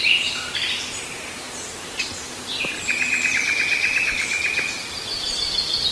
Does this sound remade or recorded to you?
recorded